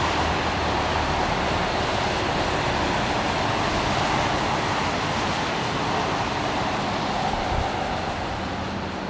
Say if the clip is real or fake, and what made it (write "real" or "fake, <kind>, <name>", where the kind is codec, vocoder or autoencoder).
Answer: real